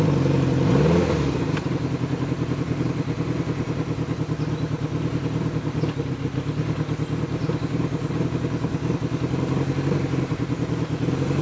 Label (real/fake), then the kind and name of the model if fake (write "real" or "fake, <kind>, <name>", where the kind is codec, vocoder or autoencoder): real